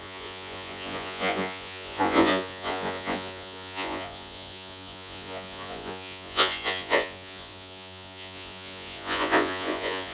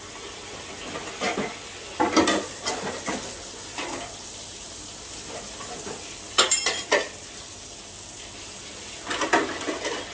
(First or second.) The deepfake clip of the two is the first